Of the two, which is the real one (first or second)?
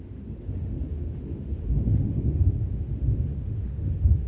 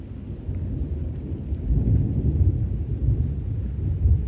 second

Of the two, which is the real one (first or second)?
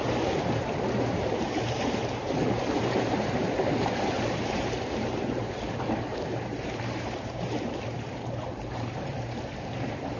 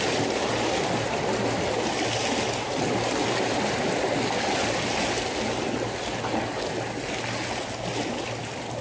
second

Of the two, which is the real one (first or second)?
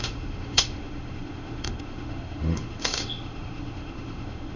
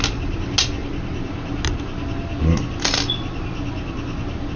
second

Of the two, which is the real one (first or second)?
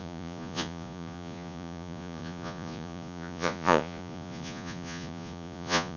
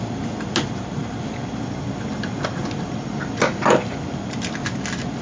second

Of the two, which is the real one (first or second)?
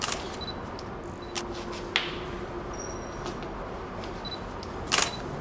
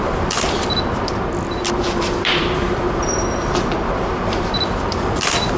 first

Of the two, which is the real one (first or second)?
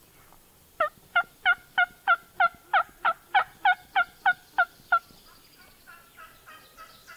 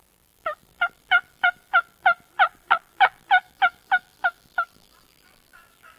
first